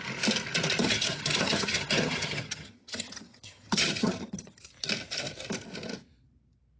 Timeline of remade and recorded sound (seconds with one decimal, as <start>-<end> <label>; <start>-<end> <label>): 0.0-0.8 recorded; 0.8-4.7 remade; 4.7-6.8 recorded